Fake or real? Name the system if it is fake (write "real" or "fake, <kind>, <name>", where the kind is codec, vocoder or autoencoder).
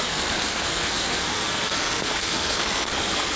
fake, codec, SNAC